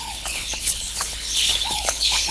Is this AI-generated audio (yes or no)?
yes